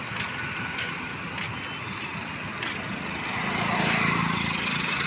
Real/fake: real